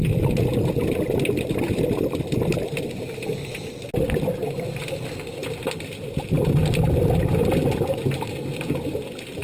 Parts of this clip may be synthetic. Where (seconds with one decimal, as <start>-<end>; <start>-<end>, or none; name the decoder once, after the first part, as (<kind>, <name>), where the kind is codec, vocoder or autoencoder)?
none